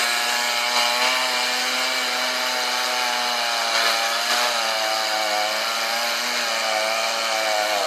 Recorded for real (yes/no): yes